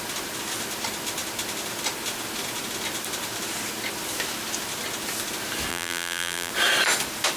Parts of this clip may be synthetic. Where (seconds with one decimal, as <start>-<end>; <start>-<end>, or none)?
5.7-6.5